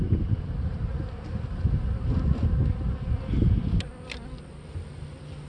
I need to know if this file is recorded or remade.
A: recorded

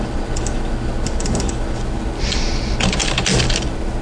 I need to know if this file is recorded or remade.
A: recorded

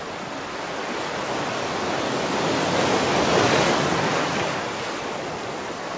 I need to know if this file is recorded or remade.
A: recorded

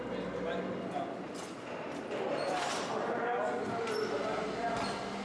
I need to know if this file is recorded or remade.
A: recorded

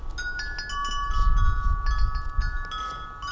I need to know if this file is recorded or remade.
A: recorded